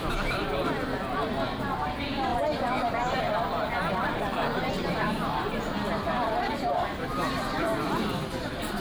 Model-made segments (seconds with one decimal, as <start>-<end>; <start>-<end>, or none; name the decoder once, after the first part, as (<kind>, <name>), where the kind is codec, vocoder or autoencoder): 0.0-2.3 (vocoder, BigVGAN v2); 3.8-4.3; 6.2-8.8